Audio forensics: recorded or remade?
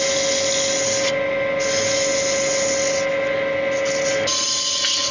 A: recorded